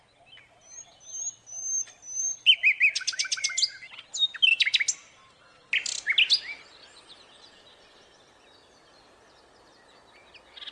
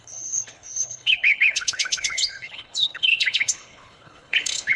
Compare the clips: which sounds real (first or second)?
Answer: first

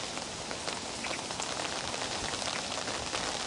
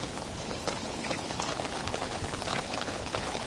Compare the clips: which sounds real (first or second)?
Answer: first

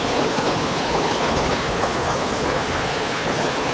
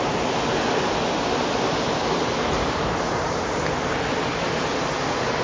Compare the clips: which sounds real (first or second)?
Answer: second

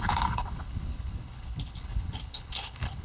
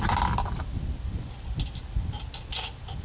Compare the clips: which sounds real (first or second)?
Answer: second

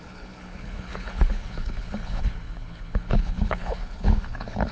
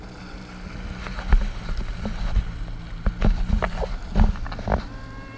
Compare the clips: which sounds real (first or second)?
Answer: second